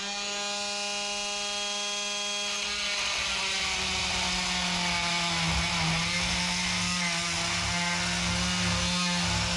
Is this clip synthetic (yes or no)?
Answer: no